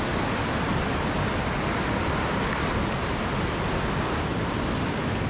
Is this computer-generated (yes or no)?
no